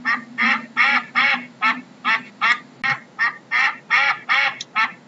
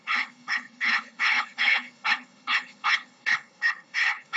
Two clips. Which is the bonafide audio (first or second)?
first